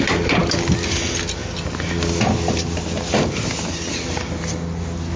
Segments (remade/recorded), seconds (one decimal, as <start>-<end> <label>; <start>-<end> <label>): 0.0-5.2 recorded